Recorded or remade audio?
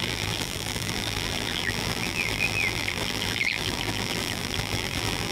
remade